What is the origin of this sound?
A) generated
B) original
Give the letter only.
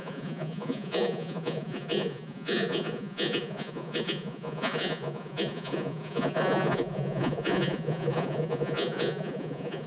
A